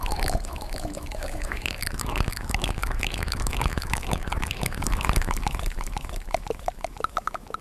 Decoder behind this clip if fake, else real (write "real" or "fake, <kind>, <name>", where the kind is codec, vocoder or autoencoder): fake, autoencoder, DAC-VAE